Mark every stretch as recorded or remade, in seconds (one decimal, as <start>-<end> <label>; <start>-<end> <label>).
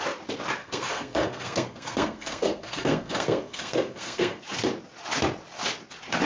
0.0-0.6 recorded; 0.6-4.4 remade; 4.4-6.3 recorded